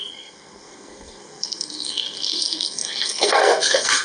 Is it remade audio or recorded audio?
remade